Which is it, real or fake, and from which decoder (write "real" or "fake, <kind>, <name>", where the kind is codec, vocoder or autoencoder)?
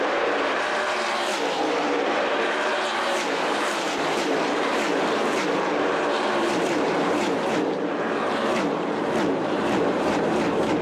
fake, vocoder, BigVGAN v2